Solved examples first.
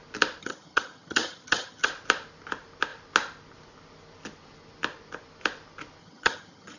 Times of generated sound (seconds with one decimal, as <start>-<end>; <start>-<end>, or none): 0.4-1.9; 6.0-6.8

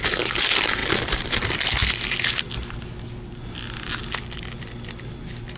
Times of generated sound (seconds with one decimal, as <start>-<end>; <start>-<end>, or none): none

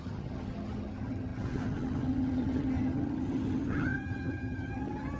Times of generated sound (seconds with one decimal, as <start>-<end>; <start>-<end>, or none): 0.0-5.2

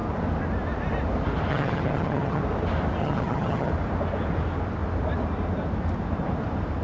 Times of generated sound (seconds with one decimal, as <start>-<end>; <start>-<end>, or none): 1.5-2.4; 3.0-3.7

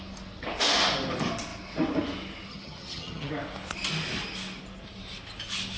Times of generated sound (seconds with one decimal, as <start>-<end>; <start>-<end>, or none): 2.5-3.3

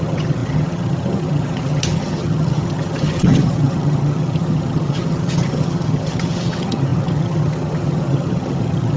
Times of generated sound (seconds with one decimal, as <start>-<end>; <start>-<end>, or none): 0.0-9.0

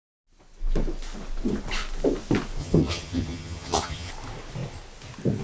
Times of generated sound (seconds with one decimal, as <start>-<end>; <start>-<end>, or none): 2.6-4.1

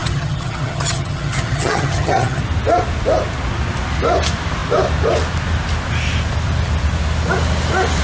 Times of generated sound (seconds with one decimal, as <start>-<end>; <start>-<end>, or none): 0.0-2.4